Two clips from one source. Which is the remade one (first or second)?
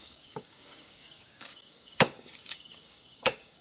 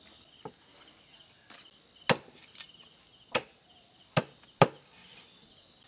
first